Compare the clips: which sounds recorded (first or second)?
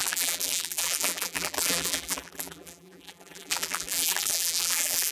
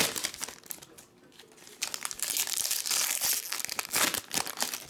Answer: second